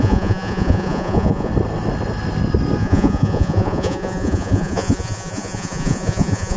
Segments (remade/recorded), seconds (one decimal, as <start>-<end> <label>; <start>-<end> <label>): 0.0-1.5 remade; 1.5-2.8 recorded; 2.8-6.6 remade